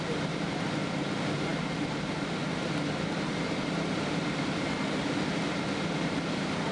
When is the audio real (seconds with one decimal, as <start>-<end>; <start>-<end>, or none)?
0.0-6.7